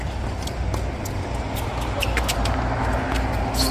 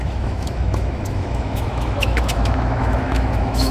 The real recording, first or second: first